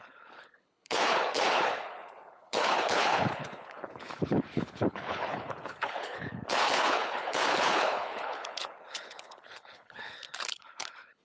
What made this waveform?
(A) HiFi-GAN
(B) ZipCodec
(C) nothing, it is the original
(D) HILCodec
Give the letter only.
D